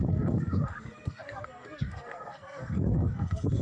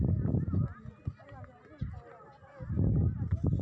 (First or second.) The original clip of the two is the second